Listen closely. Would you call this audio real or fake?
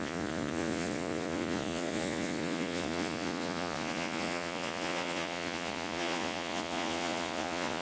fake